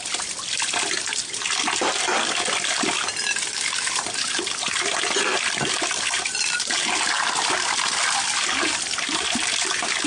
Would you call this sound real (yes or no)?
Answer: yes